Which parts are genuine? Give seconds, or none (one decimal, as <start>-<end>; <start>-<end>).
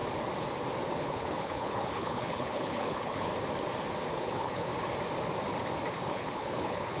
0.0-1.0; 3.3-4.1; 4.7-5.9